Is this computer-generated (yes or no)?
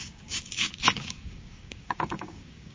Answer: yes